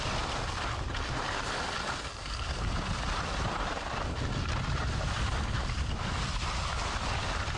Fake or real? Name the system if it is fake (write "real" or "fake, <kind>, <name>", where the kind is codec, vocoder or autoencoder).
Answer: real